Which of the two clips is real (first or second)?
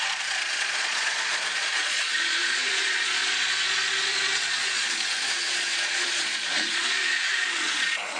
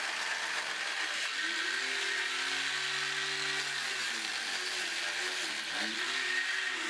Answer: second